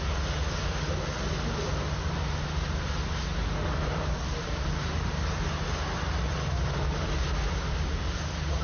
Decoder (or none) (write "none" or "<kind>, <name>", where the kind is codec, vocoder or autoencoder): none